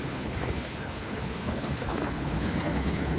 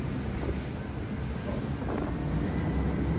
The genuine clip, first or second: second